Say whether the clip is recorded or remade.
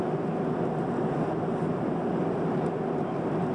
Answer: recorded